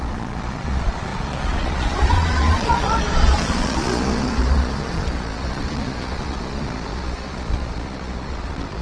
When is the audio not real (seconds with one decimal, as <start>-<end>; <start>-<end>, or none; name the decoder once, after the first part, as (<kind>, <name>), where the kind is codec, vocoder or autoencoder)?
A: 0.0-8.8 (vocoder, Vocos)